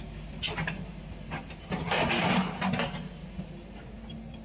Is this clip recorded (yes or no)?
yes